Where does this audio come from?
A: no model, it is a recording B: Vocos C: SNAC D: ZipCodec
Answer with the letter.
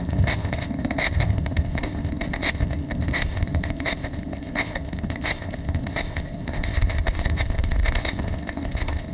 D